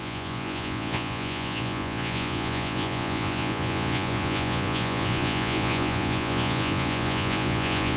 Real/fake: fake